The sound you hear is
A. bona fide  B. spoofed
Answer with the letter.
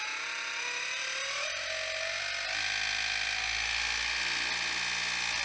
A